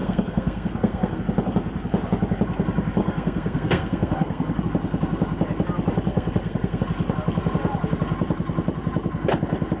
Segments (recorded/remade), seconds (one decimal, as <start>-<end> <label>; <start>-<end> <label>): 0.0-1.2 remade; 1.2-3.0 recorded; 3.0-4.6 remade; 4.6-6.1 recorded; 6.1-6.8 remade; 6.8-9.8 recorded